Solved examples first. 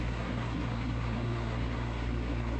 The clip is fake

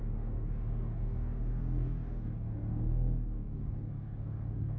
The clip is fake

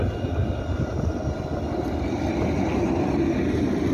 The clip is real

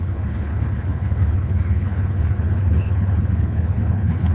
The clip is fake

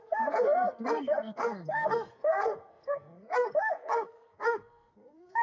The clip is fake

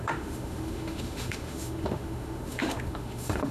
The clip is fake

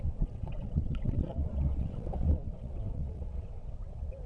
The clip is fake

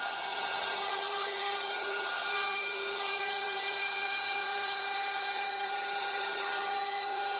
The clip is fake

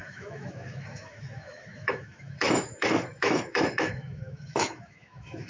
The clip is fake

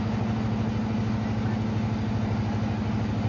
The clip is real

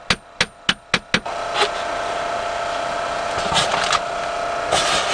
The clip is real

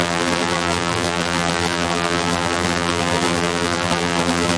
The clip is fake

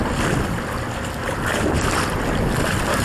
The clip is real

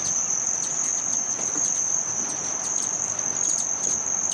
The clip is real